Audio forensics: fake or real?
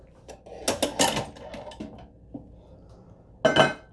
real